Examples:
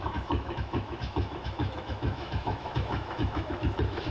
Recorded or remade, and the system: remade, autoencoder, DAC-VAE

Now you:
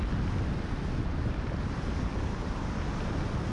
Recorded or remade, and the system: recorded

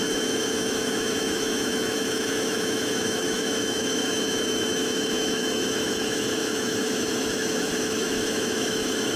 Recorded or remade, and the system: remade, autoencoder, DAC-VAE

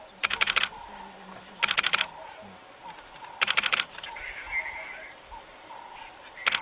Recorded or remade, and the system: recorded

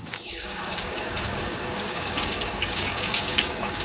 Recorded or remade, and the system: remade, codec, DAC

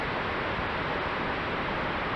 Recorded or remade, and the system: remade, vocoder, BigVGAN v2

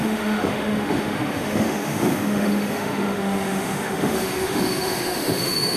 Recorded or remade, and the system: remade, autoencoder, DAC-VAE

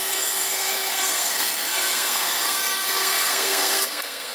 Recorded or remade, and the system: remade, codec, SNAC